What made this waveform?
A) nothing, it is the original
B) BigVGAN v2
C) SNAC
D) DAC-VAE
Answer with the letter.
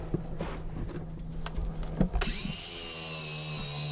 A